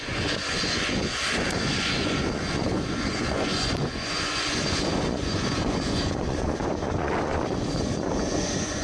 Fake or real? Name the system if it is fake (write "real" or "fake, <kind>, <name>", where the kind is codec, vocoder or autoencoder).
fake, vocoder, Vocos